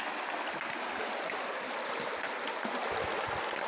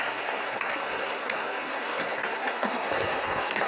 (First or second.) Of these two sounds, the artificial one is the second